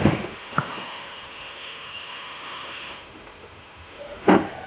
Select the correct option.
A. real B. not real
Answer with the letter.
B